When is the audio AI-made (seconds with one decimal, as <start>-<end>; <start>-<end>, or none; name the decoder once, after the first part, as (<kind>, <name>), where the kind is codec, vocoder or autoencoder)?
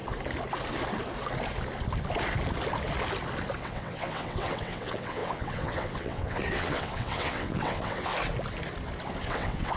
3.6-8.1 (vocoder, WaveNeXt); 9.2-9.8